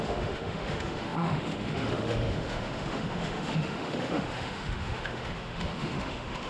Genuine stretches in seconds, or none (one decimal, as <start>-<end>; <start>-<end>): none

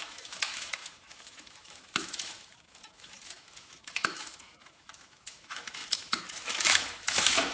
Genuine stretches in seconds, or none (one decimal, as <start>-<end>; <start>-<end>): none

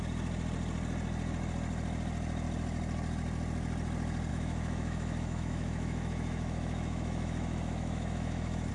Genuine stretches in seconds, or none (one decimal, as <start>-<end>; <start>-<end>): 0.0-4.3